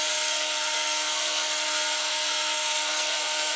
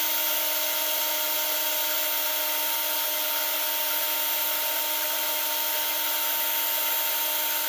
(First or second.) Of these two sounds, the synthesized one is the first